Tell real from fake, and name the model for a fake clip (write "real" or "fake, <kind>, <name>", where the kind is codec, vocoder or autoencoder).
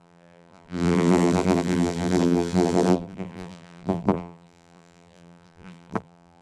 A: fake, vocoder, BigVGAN v2